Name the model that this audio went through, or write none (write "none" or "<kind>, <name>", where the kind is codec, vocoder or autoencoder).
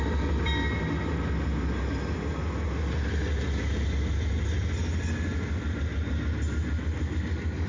none